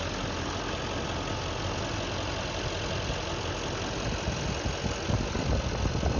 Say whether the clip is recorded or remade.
recorded